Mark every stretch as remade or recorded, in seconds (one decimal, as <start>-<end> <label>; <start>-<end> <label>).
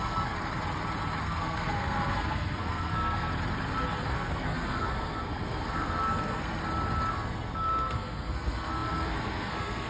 0.0-0.4 remade; 0.4-1.2 recorded; 1.2-3.3 remade; 3.3-4.0 recorded; 4.0-6.6 remade; 6.6-7.1 recorded; 7.1-9.9 remade